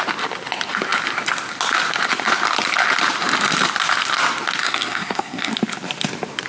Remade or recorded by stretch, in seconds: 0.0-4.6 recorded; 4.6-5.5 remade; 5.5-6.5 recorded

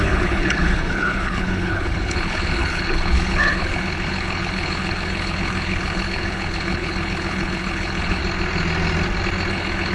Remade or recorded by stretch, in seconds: 0.0-8.2 remade; 8.2-9.5 recorded; 9.5-9.9 remade

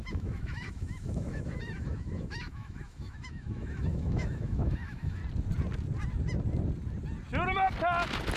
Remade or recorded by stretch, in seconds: 0.0-5.2 remade; 5.2-8.4 recorded

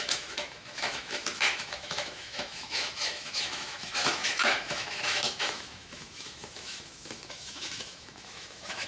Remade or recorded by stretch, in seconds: 0.0-8.9 remade

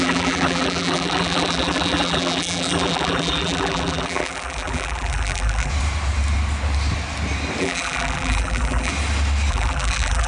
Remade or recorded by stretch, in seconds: 0.0-5.7 remade; 5.7-7.6 recorded; 7.6-8.9 remade; 8.9-9.5 recorded; 9.5-10.3 remade